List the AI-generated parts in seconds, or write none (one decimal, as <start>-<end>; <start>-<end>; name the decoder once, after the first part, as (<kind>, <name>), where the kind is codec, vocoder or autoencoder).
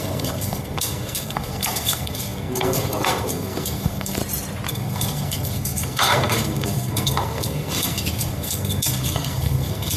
0.0-4.2 (codec, SNAC); 4.7-10.0